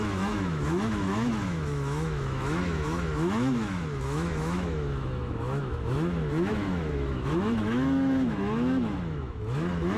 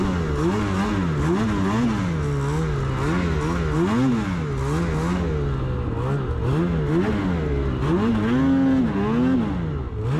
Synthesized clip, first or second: first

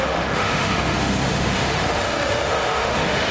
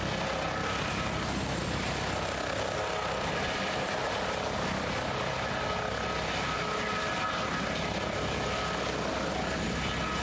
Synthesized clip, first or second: first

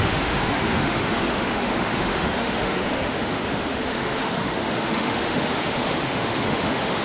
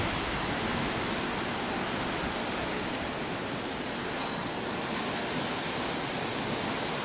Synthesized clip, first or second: first